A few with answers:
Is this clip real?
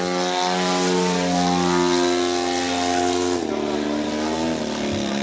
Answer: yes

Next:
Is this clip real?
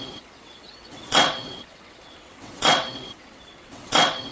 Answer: no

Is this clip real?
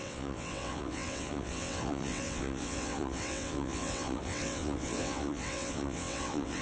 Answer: no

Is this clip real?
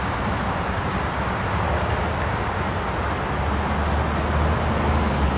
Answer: yes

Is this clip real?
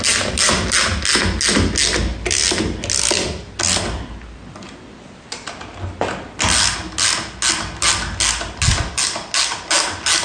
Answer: yes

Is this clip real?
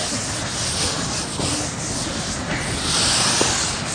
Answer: yes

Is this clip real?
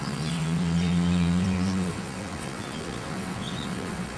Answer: no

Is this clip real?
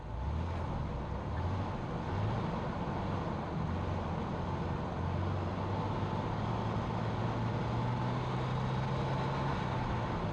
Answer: yes